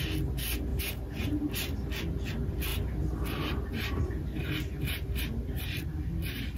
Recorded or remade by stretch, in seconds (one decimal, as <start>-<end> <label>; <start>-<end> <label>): 0.0-0.7 recorded; 0.7-1.5 remade; 1.5-2.7 recorded; 2.7-5.1 remade; 5.1-6.6 recorded